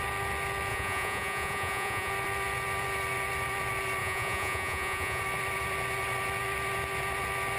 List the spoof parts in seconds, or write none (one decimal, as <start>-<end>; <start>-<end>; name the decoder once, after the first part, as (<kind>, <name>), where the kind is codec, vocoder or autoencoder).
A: 0.7-2.1 (vocoder, Vocos); 4.0-5.2